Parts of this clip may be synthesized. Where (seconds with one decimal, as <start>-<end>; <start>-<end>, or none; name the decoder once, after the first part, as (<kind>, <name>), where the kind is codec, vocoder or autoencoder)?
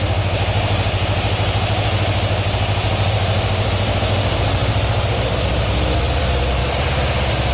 none